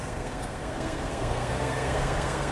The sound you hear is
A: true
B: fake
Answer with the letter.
B